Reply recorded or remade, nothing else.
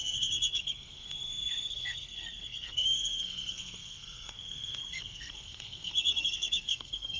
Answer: remade